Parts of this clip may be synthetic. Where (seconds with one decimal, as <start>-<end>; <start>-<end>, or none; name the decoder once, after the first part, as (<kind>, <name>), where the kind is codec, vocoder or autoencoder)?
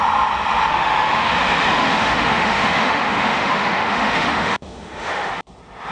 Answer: 0.7-1.3 (autoencoder, DAC-VAE); 1.8-5.3